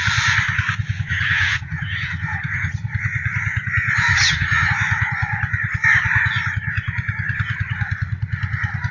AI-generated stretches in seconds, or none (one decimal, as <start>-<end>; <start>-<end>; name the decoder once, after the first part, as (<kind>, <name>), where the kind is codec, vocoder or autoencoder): 1.1-2.7 (vocoder, HiFi-GAN); 4.1-4.7